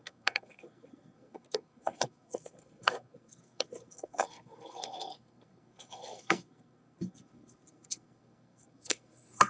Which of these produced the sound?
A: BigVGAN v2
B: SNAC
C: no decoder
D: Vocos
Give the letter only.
B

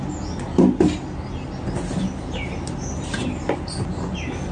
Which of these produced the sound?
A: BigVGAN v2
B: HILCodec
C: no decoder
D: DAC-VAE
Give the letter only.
C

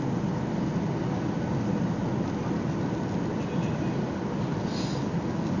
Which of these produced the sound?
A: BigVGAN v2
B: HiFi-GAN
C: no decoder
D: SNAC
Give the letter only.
C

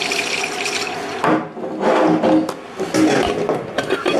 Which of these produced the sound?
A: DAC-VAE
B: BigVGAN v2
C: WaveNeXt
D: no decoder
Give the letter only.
D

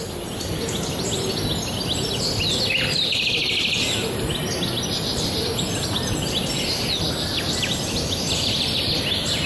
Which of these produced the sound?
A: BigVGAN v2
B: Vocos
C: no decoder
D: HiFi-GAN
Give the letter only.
C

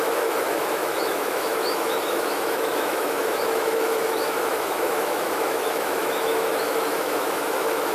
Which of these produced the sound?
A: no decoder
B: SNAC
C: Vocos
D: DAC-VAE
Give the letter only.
D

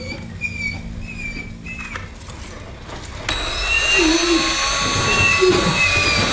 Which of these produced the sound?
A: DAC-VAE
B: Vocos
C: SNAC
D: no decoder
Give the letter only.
D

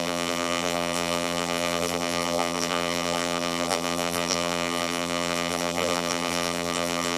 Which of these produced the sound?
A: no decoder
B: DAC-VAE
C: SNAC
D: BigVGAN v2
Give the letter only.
D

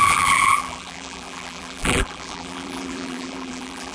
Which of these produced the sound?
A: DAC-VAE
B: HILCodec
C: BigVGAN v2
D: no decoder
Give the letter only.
C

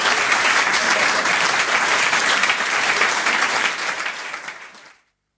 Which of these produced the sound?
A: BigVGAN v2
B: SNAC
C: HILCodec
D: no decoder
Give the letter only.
A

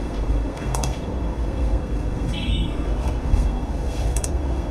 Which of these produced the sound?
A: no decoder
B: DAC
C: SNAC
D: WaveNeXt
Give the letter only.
C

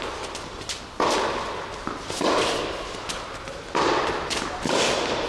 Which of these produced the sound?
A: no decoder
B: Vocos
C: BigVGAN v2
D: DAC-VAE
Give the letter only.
A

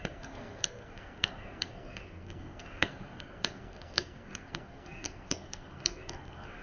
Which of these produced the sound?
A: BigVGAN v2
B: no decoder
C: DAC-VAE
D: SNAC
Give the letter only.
D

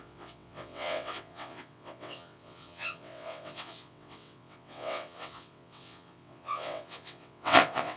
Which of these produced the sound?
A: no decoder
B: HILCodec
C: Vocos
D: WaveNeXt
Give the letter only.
D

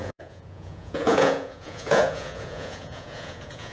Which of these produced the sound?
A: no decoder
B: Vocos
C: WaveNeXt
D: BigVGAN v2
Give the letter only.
B